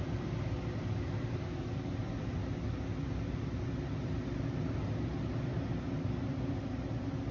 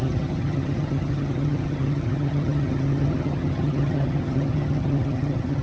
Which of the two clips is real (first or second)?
first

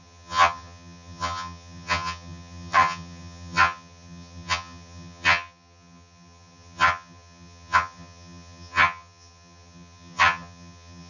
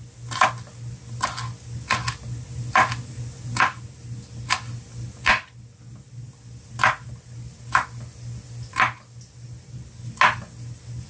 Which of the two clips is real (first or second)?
second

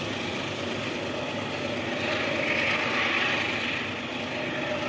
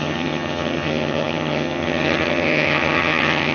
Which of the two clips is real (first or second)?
first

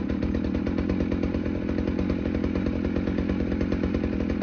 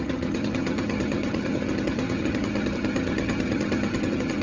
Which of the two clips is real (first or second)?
first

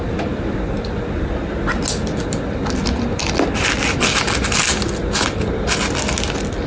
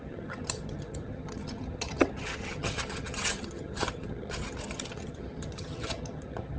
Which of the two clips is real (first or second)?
first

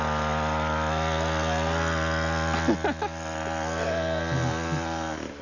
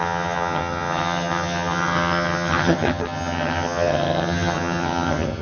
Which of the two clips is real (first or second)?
first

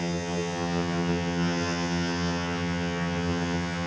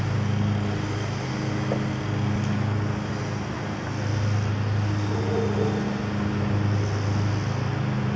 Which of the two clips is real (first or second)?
second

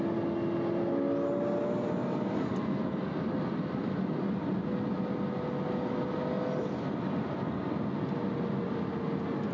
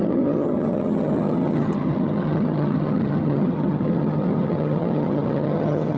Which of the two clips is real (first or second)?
first